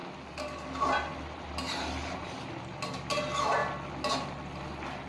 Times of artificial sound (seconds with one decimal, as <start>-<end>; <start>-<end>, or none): none